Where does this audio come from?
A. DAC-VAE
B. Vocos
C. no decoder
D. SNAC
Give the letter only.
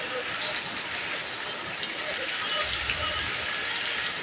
C